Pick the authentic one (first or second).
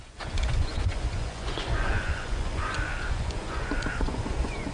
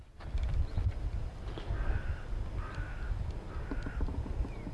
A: second